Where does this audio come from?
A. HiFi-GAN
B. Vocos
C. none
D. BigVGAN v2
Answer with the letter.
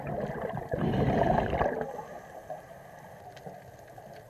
C